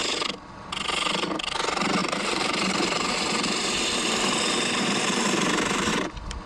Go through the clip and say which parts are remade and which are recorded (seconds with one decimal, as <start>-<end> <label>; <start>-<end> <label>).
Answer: 0.0-2.0 recorded; 2.0-5.9 remade; 5.9-6.5 recorded